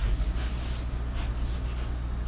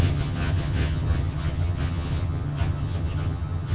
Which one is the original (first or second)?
first